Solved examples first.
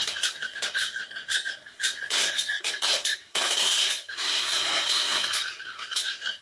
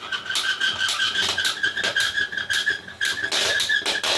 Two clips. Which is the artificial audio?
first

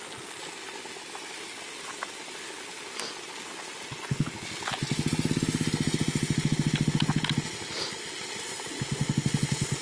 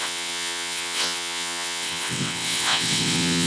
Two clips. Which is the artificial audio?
second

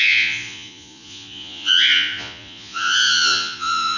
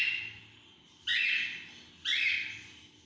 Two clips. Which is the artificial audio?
first